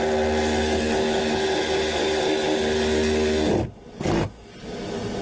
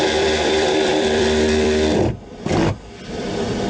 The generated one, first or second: second